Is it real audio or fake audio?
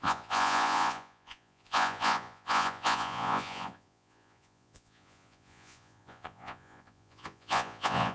fake